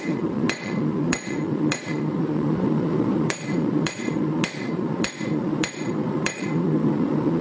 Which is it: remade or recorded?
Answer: remade